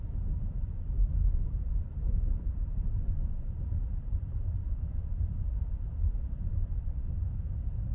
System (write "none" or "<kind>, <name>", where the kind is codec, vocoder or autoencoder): vocoder, BigVGAN v2